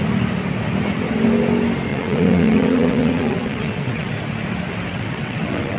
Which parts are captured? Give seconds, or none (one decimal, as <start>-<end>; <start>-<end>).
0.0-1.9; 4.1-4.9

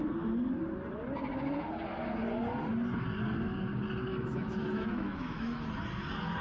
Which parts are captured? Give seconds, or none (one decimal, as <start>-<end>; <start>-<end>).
0.0-4.1; 5.7-6.4

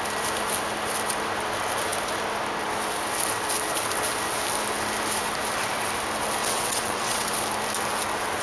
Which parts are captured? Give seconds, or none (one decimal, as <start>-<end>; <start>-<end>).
0.0-6.4; 7.3-8.4